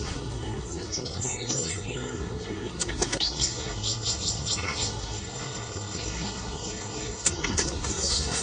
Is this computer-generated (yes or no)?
yes